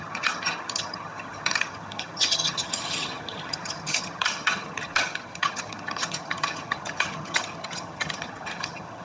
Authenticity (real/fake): fake